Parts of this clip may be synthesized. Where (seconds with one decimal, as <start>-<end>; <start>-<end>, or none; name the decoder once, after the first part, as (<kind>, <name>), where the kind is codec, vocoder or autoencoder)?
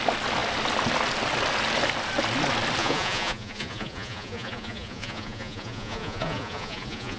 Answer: 2.8-7.2 (vocoder, Vocos)